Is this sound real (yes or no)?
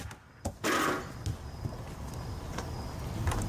yes